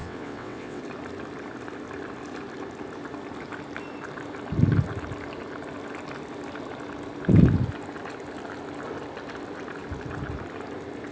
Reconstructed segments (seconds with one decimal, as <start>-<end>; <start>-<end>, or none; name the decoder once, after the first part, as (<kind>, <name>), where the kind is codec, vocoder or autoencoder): 0.0-0.8 (vocoder, WaveNeXt)